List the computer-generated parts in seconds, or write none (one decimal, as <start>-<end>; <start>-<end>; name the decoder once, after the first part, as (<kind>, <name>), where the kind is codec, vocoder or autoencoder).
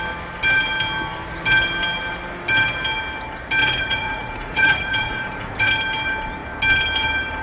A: 3.6-5.7 (vocoder, Vocos)